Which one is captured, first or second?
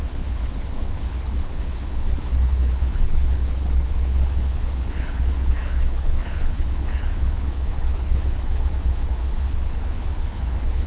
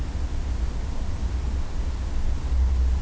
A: second